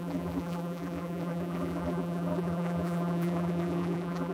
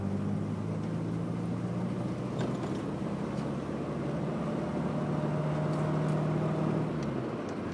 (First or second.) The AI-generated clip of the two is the first